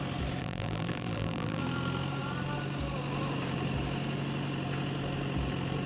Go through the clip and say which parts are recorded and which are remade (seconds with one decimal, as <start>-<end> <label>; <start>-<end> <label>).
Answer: 0.0-0.4 recorded; 0.4-1.6 remade; 1.6-5.9 recorded